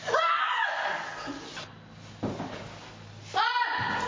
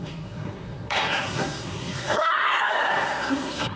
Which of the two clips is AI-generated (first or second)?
second